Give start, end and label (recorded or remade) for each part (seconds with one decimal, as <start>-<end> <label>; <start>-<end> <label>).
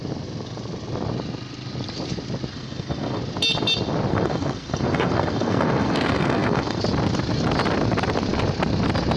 0.0-2.5 recorded; 2.5-3.2 remade; 3.2-4.1 recorded; 4.1-6.8 remade; 6.8-9.2 recorded